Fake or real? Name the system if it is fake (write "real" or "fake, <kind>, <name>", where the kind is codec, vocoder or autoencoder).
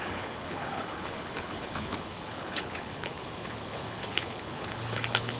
fake, codec, HILCodec